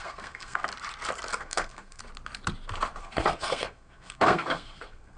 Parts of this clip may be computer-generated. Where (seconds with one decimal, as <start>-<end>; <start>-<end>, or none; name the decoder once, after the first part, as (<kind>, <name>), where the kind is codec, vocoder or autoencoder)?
0.0-0.7 (codec, SNAC); 1.4-2.0; 3.0-5.2